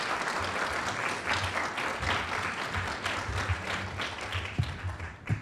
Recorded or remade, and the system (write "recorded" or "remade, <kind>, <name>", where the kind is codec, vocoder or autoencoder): recorded